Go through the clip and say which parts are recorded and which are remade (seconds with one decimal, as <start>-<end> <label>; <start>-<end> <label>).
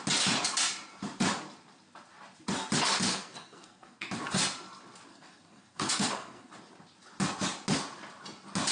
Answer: 0.0-3.1 recorded; 3.1-4.1 remade; 4.1-5.1 recorded; 5.1-6.5 remade; 6.5-8.7 recorded